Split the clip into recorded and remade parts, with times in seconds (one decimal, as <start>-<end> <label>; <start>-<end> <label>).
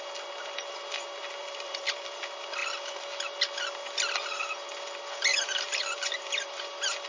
0.0-1.4 recorded; 1.4-2.2 remade; 2.2-5.3 recorded; 5.3-6.6 remade; 6.6-7.1 recorded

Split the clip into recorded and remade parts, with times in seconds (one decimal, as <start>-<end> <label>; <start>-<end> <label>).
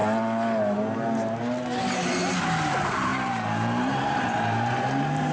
0.0-1.8 recorded; 1.8-5.3 remade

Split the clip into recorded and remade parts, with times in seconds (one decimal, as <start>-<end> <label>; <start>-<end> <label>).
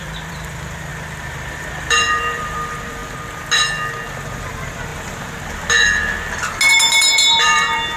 0.0-0.9 remade; 0.9-1.5 recorded; 1.5-3.0 remade; 3.0-4.2 recorded; 4.2-4.9 remade; 4.9-6.7 recorded; 6.7-8.0 remade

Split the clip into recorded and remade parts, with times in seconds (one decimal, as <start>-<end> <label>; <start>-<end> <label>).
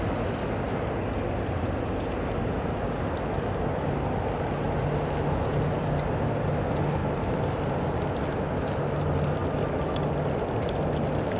0.0-7.0 recorded; 7.0-7.6 remade; 7.6-11.4 recorded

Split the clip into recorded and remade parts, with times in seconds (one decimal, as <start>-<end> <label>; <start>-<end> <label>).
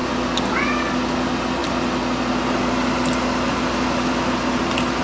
0.0-5.0 recorded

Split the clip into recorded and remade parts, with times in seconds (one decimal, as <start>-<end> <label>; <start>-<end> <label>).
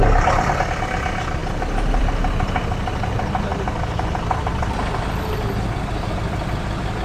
0.0-7.0 recorded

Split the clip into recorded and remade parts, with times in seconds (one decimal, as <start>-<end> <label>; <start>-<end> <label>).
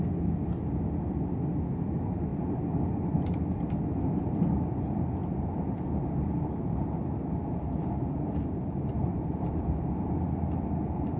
0.0-5.2 recorded; 5.2-10.1 remade; 10.1-11.2 recorded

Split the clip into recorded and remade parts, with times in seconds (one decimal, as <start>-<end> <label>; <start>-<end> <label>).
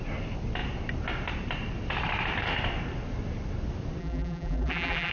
0.0-4.0 recorded; 4.0-5.1 remade